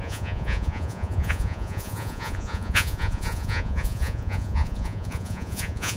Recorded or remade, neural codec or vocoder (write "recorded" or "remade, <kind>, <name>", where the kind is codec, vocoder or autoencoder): remade, vocoder, Vocos